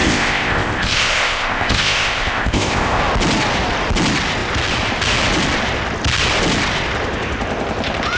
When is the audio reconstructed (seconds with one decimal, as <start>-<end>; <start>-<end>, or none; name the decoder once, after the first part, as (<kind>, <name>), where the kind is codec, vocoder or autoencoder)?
0.0-3.0 (codec, ZipCodec)